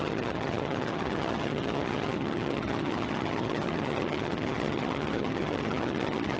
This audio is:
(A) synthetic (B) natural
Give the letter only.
A